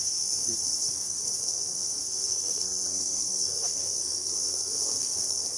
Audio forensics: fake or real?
fake